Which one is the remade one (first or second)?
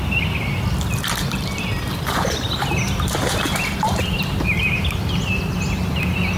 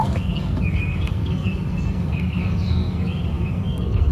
second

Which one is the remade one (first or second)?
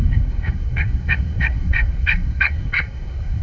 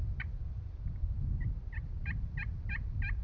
first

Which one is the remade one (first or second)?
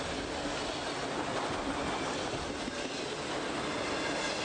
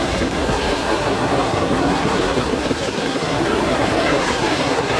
second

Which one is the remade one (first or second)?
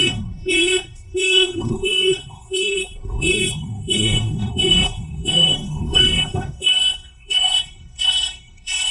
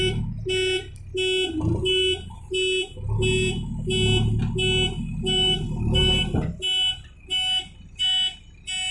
first